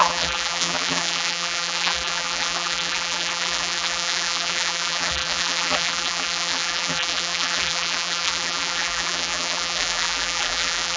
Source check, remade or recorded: remade